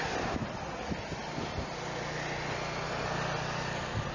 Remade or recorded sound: recorded